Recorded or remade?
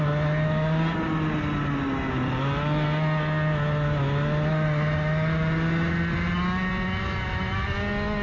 recorded